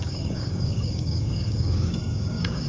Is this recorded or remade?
remade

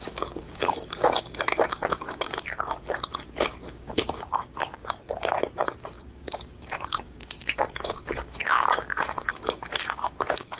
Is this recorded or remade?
remade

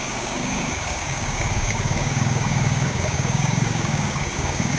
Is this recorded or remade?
remade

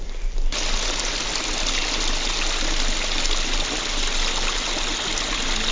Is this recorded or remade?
recorded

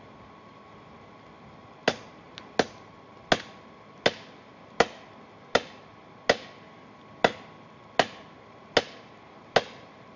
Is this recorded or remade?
recorded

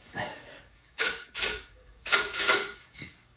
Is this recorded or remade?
remade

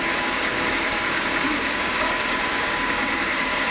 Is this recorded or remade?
remade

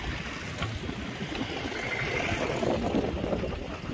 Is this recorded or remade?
recorded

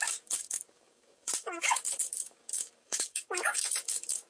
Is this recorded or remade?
remade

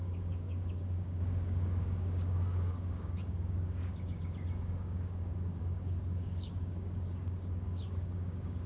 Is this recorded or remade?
remade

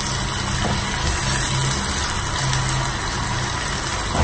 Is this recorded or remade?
recorded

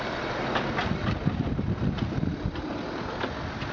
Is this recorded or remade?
recorded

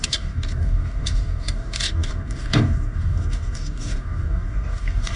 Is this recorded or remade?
remade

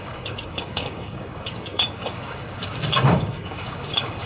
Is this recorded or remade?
remade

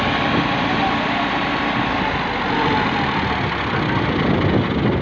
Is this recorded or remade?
recorded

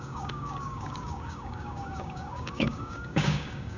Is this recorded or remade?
remade